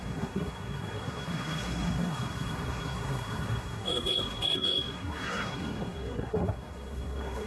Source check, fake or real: fake